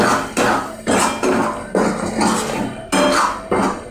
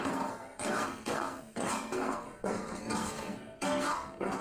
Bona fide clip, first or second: first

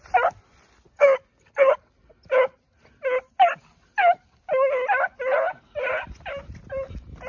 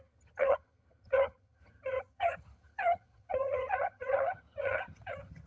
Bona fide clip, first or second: first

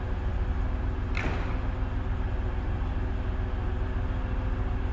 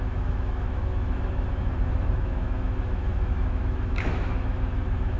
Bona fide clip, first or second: first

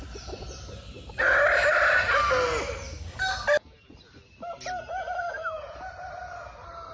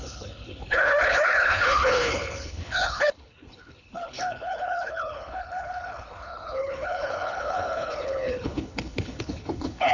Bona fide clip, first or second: first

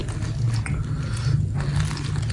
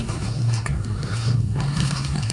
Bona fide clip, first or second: first